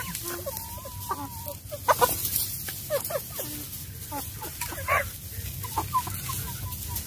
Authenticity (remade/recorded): recorded